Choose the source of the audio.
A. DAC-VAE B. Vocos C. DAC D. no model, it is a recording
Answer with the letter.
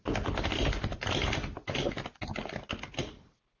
D